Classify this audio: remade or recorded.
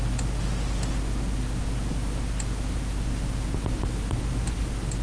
recorded